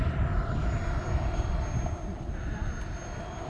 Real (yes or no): yes